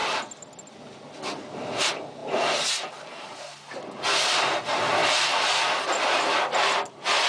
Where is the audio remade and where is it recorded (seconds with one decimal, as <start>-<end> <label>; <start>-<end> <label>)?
0.0-7.3 recorded